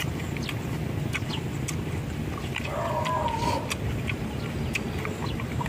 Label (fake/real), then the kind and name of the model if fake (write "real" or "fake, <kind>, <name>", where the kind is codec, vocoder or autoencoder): real